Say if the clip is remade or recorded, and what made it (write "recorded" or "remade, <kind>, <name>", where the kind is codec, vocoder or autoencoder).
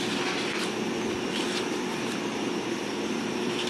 recorded